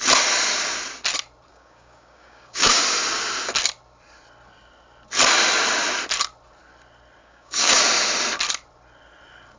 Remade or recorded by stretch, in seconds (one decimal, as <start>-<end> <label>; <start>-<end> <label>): 0.0-1.5 recorded; 1.5-2.8 remade; 2.8-7.2 recorded; 7.2-7.8 remade; 7.8-9.6 recorded